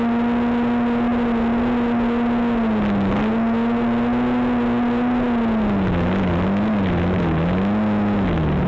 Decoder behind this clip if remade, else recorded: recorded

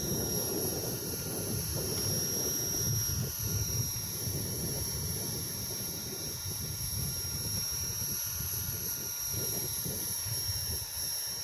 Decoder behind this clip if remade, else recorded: recorded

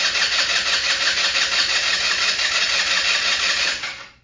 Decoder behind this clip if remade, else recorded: recorded